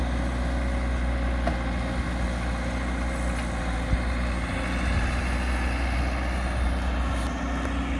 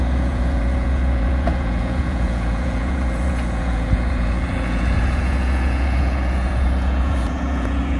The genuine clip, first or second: first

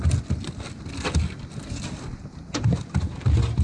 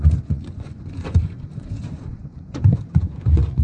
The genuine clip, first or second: first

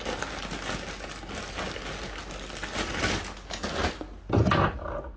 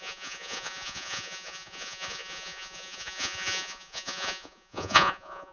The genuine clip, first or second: first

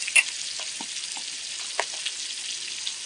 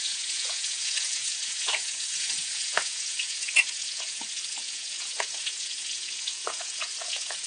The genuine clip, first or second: first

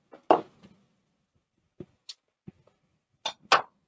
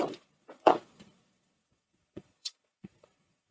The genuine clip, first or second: first